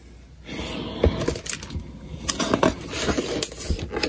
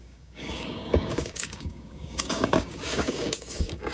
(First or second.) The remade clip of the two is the second